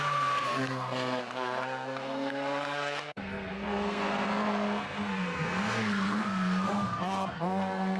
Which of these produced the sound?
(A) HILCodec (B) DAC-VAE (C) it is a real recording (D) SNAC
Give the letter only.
D